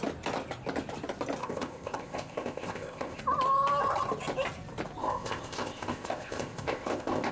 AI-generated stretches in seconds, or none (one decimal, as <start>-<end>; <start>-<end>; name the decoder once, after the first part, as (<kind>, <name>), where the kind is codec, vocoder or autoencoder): 1.4-3.2 (codec, ZipCodec); 5.0-7.3